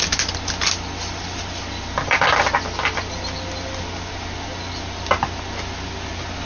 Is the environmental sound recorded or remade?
recorded